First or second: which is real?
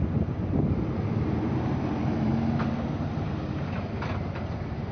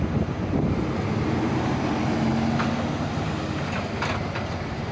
second